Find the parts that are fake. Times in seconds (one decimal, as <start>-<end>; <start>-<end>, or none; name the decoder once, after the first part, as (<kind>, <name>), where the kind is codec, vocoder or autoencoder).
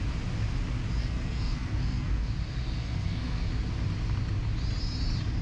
1.0-2.3 (codec, SNAC); 2.8-3.5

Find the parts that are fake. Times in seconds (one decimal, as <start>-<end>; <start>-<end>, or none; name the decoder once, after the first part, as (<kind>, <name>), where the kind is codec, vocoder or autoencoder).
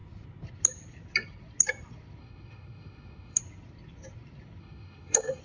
2.2-3.4 (autoencoder, DAC-VAE); 4.6-5.4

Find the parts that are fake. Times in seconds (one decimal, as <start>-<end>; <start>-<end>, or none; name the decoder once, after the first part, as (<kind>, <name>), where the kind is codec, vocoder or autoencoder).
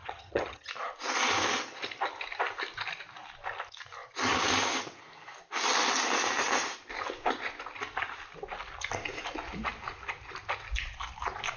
0.0-0.7 (vocoder, HiFi-GAN)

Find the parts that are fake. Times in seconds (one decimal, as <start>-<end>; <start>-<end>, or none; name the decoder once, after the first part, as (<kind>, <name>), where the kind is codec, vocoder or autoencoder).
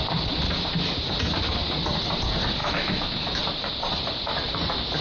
2.6-3.4 (autoencoder, DAC-VAE)